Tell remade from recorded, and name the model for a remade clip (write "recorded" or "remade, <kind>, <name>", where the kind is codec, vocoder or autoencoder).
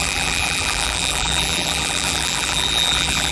remade, vocoder, BigVGAN v2